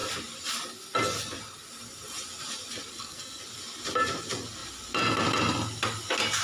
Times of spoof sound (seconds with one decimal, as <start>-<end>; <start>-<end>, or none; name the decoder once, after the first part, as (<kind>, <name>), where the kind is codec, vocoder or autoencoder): 2.9-3.4 (codec, SNAC)